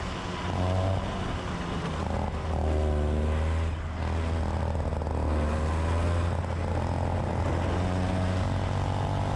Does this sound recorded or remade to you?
recorded